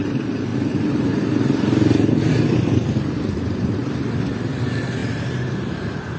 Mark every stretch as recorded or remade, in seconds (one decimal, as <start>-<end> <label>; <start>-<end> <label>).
0.0-6.2 remade

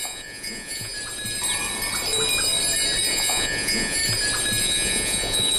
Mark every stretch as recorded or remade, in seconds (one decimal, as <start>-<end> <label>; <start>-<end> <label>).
0.0-0.9 remade; 0.9-3.1 recorded; 3.1-4.0 remade; 4.0-4.6 recorded; 4.6-5.6 remade

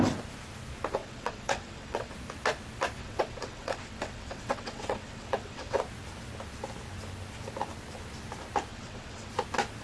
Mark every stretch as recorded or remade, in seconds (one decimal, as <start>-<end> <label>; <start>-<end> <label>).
0.0-1.0 recorded; 1.0-2.1 remade; 2.1-3.0 recorded; 3.0-5.8 remade; 5.8-8.7 recorded; 8.7-9.3 remade; 9.3-9.8 recorded